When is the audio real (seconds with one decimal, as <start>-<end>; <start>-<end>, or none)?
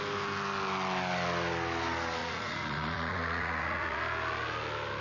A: 0.0-2.2; 4.0-5.0